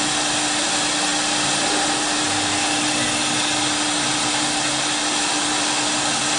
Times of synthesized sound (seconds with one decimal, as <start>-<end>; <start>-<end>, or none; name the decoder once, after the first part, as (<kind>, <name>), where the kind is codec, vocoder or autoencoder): none